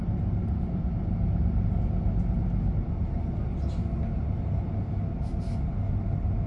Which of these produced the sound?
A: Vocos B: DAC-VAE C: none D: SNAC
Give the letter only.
C